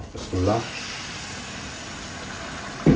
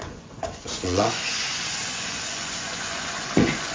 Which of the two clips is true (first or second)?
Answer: first